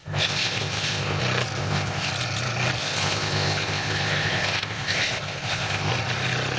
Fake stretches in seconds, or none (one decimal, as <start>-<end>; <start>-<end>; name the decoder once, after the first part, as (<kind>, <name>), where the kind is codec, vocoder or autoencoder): 0.0-1.2 (codec, ZipCodec); 1.6-2.1; 2.8-5.9

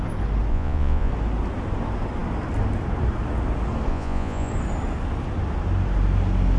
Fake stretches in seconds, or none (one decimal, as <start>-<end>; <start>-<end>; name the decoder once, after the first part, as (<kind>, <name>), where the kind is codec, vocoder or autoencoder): 0.5-1.1 (vocoder, Vocos); 3.9-4.5